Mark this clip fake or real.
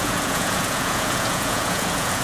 fake